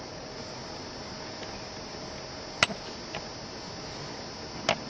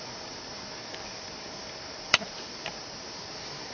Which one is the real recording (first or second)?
first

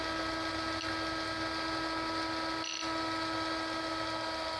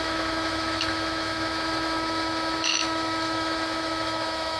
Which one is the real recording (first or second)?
first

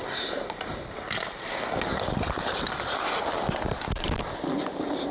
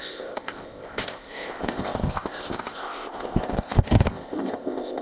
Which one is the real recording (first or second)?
first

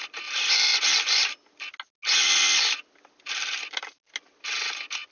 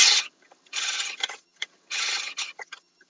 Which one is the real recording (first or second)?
first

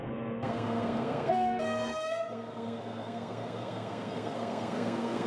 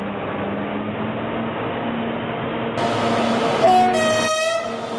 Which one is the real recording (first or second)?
second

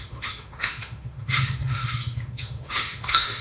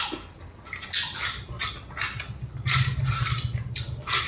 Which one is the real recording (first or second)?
second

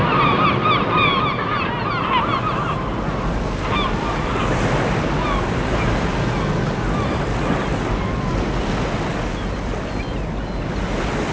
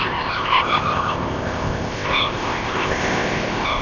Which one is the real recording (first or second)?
first